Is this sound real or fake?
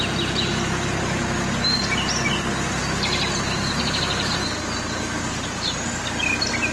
real